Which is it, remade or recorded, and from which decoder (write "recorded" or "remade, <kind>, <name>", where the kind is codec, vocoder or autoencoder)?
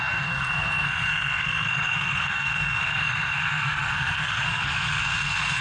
remade, codec, SNAC